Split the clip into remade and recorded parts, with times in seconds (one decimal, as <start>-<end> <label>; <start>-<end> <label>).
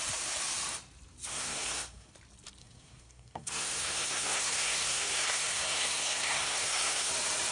0.0-1.3 recorded; 1.3-2.1 remade; 2.1-2.6 recorded; 2.6-7.1 remade; 7.1-7.5 recorded